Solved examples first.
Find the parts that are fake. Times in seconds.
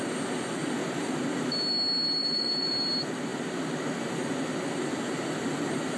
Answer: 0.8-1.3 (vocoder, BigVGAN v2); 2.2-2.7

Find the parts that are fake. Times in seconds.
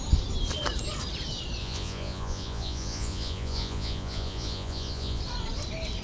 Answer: 1.6-5.2 (vocoder, Vocos)